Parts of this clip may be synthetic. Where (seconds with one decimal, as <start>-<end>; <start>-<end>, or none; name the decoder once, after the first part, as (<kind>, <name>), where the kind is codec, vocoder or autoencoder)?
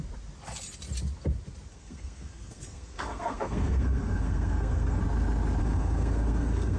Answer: 1.7-5.0 (codec, SNAC); 5.6-6.8